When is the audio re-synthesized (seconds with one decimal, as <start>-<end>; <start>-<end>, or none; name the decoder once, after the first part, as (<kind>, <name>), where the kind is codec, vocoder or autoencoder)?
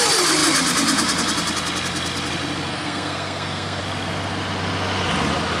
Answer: 2.7-3.8 (codec, SNAC)